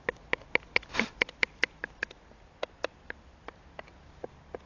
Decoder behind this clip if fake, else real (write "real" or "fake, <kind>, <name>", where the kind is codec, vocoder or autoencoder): real